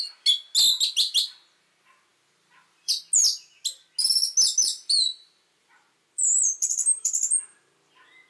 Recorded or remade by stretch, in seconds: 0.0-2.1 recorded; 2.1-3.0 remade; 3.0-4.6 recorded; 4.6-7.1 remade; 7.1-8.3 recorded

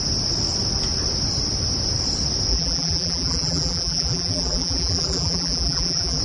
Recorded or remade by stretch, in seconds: 0.0-2.5 recorded; 2.5-6.2 remade

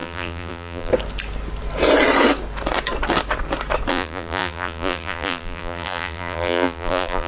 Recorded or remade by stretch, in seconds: 0.0-0.9 remade; 0.9-3.9 recorded; 3.9-7.3 remade

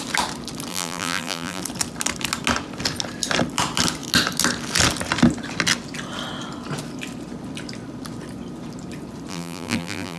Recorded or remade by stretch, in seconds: 0.0-0.7 recorded; 0.7-1.6 remade; 1.6-9.3 recorded; 9.3-10.2 remade